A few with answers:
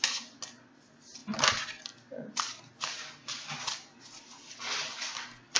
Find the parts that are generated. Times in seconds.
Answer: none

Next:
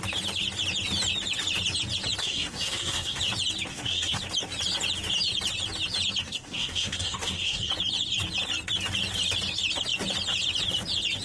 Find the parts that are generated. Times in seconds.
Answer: 2.2-3.2 (codec, SNAC); 3.7-4.2; 6.2-7.7

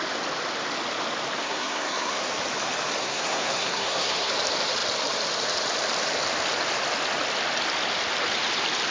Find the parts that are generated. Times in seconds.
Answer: 1.4-2.3 (codec, SNAC); 3.0-4.3